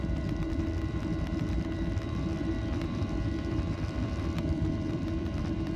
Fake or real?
fake